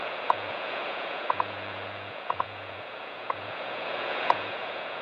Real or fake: fake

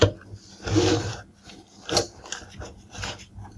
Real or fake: real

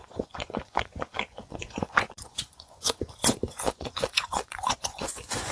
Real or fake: fake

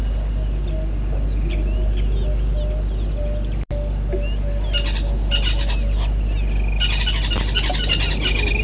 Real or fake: real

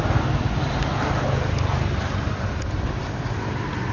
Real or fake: real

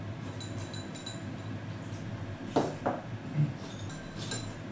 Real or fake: real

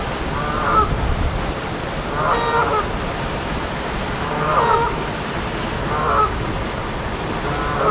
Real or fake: real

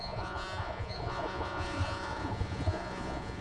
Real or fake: fake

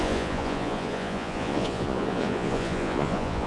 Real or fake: fake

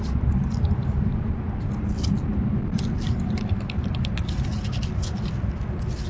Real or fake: real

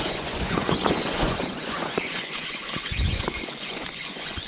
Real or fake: fake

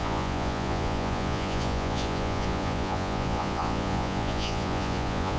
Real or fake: fake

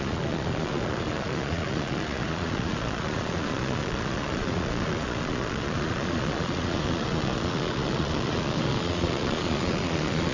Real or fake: fake